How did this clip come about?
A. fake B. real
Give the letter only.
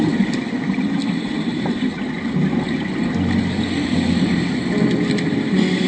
B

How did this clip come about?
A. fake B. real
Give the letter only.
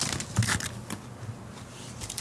B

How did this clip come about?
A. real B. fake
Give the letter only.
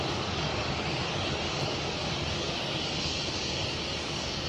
B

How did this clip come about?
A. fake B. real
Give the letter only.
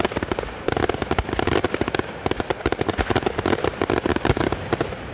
B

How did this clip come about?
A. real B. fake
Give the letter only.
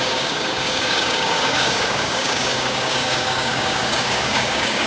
B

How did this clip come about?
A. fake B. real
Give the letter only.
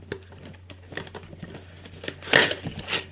B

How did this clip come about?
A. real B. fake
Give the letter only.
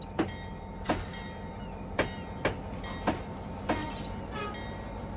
A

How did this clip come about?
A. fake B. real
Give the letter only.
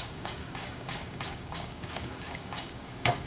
A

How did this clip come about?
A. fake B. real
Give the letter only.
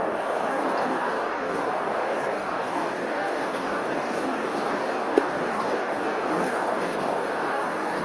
A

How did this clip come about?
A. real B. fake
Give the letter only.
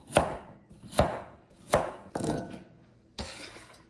B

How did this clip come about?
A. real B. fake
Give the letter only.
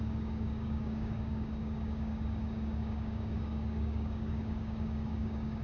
B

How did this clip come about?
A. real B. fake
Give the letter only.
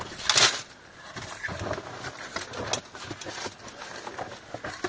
A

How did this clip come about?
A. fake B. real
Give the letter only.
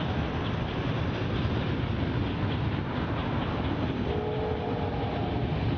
B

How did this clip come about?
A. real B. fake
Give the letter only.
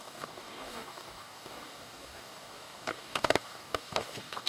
B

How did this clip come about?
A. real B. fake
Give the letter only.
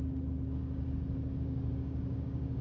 B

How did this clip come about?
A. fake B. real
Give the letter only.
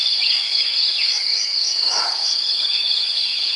A